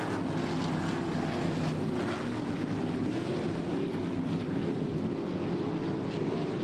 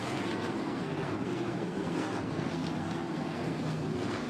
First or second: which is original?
first